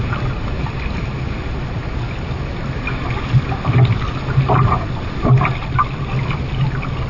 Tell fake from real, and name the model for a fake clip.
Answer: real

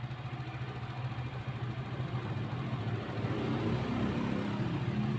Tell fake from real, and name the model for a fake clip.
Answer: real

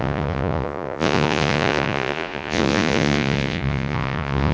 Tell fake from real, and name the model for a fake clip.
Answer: fake, vocoder, Vocos